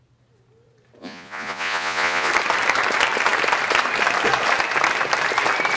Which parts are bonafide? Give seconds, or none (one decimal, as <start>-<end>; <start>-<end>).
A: 0.0-1.0; 2.3-5.8